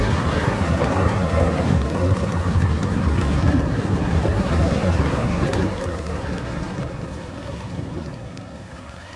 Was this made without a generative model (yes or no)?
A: no